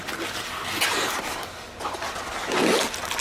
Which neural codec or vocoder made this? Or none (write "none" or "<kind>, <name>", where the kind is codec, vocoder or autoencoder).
none